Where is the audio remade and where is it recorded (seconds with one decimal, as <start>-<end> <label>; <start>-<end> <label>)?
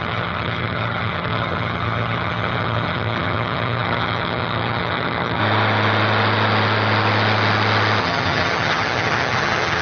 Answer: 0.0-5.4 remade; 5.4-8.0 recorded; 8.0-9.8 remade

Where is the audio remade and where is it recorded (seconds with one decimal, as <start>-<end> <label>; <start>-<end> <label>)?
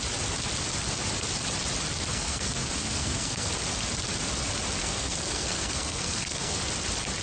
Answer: 0.0-2.1 recorded; 2.1-3.5 remade; 3.5-4.8 recorded; 4.8-6.6 remade; 6.6-7.2 recorded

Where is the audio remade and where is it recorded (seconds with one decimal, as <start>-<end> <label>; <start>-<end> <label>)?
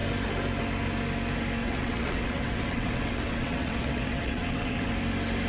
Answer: 0.0-1.6 recorded; 1.6-4.9 remade; 4.9-5.5 recorded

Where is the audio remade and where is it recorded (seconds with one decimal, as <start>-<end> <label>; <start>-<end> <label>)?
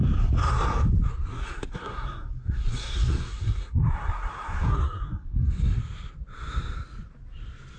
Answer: 0.0-1.1 recorded; 1.1-5.8 remade; 5.8-7.8 recorded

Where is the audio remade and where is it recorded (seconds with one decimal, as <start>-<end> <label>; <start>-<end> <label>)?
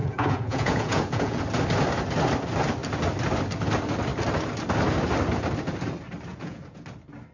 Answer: 0.0-1.4 remade; 1.4-6.3 recorded; 6.3-6.8 remade; 6.8-7.3 recorded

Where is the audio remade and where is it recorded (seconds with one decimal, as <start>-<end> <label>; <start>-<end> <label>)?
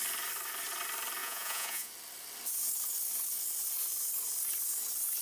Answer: 0.0-1.2 recorded; 1.2-1.9 remade; 1.9-5.2 recorded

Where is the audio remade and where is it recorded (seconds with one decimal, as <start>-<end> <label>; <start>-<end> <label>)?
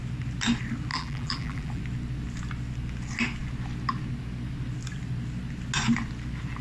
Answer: 0.0-0.9 recorded; 0.9-1.8 remade; 1.8-6.6 recorded